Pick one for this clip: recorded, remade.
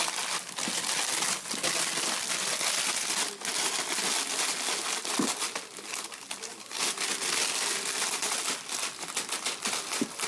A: recorded